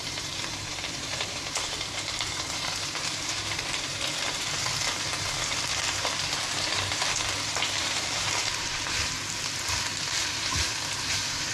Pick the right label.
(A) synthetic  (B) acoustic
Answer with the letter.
A